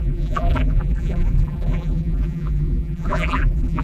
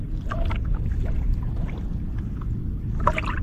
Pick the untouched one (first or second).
second